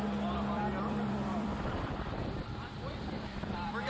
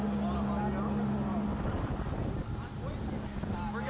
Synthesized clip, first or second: first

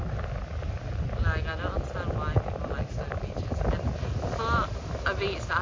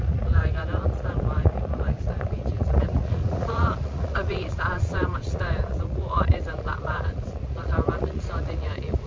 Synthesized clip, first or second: second